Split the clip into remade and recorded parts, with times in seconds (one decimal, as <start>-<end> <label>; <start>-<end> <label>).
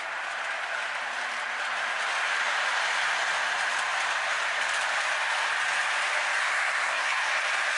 0.0-6.4 recorded; 6.4-7.3 remade; 7.3-7.8 recorded